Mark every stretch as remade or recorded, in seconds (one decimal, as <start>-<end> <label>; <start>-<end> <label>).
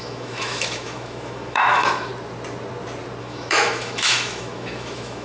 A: 0.0-2.1 remade; 2.1-3.2 recorded; 3.2-5.2 remade